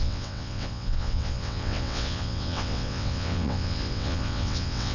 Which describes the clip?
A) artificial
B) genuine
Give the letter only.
A